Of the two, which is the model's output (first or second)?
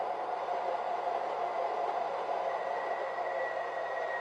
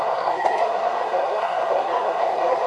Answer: second